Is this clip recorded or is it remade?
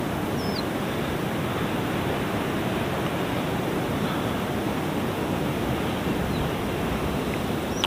recorded